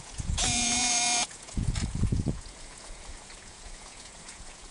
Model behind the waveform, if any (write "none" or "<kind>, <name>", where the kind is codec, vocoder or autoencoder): vocoder, Vocos